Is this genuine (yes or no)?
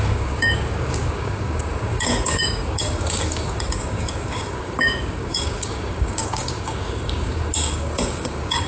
no